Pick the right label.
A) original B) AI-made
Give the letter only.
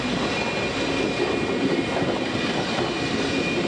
A